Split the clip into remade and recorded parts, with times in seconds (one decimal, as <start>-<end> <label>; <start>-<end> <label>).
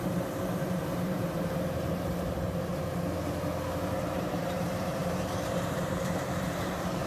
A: 0.0-2.7 remade; 2.7-4.2 recorded; 4.2-7.1 remade